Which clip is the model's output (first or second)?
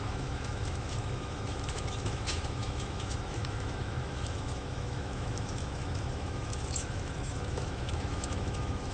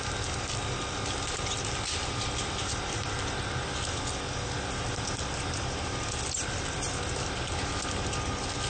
first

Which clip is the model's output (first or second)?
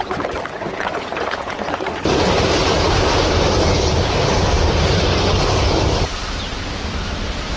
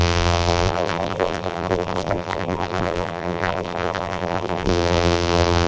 second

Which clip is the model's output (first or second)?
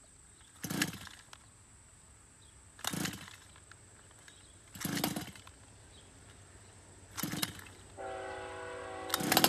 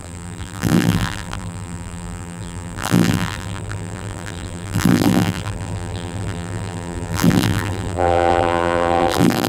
second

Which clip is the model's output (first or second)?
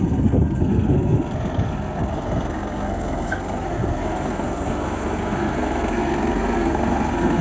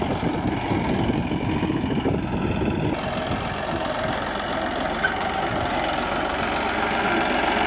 first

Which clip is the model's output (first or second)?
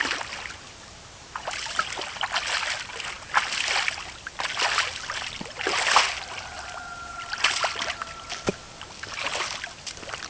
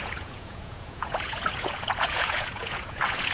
second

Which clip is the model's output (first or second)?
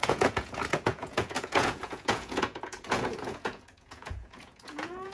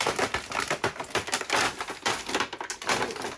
first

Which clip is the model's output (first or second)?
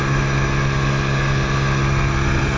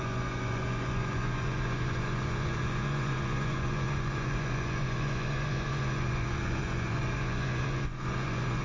second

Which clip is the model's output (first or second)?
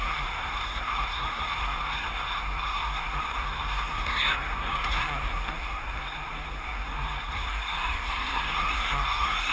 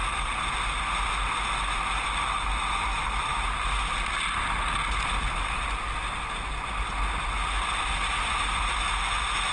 first